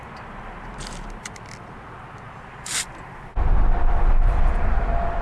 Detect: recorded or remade recorded